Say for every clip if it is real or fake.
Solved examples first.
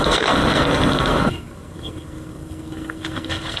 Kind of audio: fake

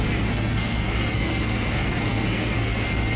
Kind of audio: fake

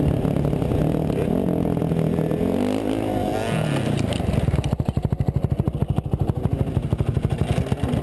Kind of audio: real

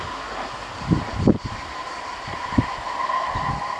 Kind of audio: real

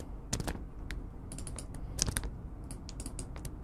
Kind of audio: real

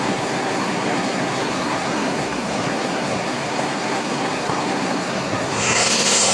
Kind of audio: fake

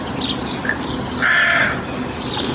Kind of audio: real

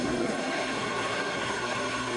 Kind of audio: fake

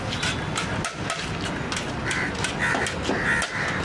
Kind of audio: real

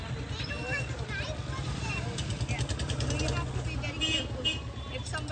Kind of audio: real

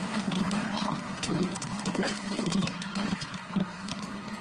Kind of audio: fake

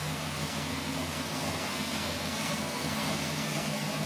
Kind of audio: fake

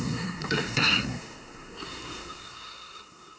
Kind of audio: fake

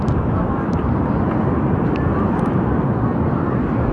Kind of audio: real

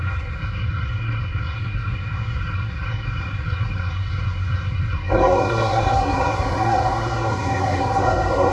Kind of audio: fake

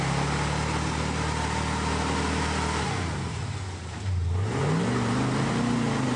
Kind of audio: real